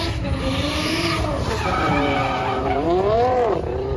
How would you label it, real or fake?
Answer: fake